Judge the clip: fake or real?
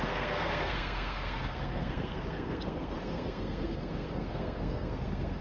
fake